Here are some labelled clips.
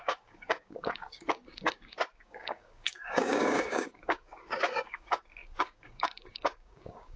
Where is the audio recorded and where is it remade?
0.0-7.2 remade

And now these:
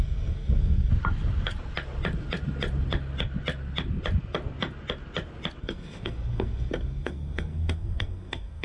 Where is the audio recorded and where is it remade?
0.0-0.9 remade; 0.9-5.6 recorded; 5.6-8.6 remade